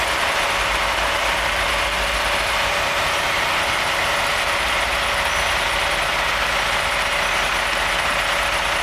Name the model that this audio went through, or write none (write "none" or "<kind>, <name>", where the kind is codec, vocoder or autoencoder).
none